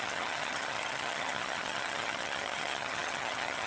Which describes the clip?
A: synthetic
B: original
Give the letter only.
A